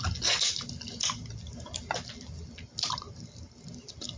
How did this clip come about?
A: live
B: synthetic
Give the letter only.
A